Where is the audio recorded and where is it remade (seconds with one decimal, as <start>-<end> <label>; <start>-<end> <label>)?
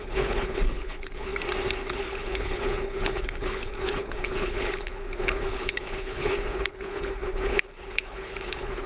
0.0-1.3 remade; 1.3-1.9 recorded; 1.9-8.9 remade